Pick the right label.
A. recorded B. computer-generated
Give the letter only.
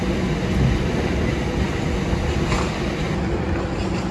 A